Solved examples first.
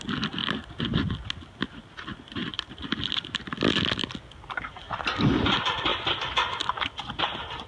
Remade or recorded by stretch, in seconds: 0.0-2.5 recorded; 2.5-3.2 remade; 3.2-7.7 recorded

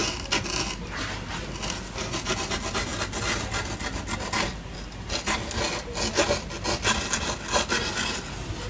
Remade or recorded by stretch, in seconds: 0.0-8.7 recorded

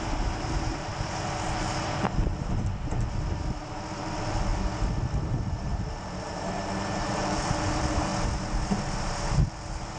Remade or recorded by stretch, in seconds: 0.0-0.9 remade; 0.9-1.6 recorded; 1.6-4.5 remade; 4.5-5.3 recorded; 5.3-8.1 remade; 8.1-9.0 recorded; 9.0-10.0 remade

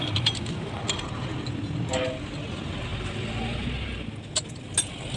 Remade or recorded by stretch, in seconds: 0.0-5.2 recorded

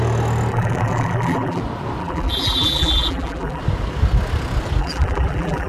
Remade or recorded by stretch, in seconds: 0.0-0.5 recorded; 0.5-1.6 remade; 1.6-2.0 recorded; 2.0-3.6 remade; 3.6-4.8 recorded; 4.8-5.7 remade

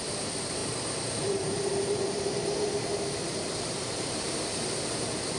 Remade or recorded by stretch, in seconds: 0.0-4.5 remade; 4.5-5.4 recorded

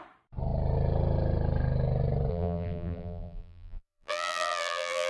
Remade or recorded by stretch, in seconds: 0.0-2.3 recorded; 2.3-5.1 remade

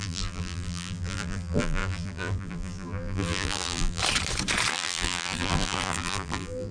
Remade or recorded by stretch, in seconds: 0.0-4.0 remade; 4.0-4.7 recorded; 4.7-6.7 remade